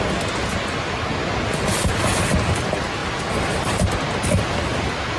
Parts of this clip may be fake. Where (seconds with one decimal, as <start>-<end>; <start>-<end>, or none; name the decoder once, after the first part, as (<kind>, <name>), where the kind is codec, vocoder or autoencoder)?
none